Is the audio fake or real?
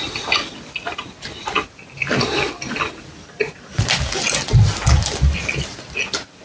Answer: real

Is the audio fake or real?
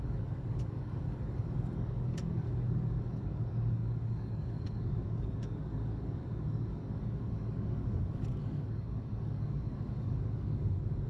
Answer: fake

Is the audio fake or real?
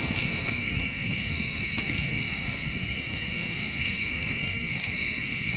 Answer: fake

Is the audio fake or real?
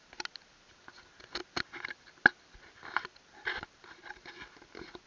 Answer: real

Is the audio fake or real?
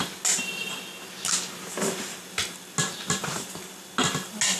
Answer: real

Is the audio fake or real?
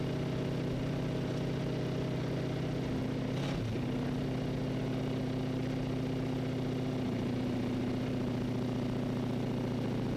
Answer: real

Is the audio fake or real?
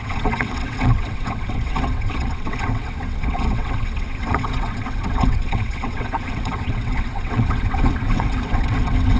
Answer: fake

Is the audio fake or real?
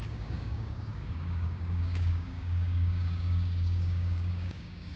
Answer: fake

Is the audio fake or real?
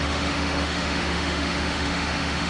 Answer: fake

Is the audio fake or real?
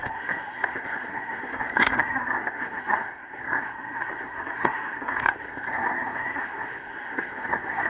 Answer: fake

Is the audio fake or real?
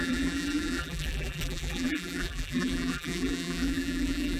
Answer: fake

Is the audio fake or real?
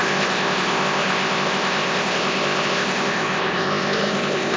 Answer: fake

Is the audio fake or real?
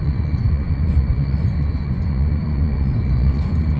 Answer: fake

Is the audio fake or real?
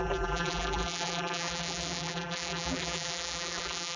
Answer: fake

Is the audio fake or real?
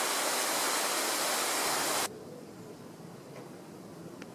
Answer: real